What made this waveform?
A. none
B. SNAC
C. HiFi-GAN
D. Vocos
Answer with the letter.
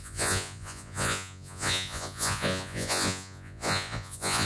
D